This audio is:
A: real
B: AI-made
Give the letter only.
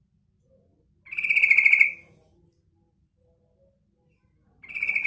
A